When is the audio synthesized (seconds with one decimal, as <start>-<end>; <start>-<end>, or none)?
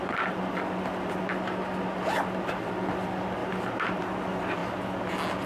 3.4-4.0